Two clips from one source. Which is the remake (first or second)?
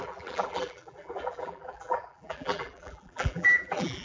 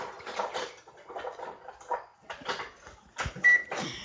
first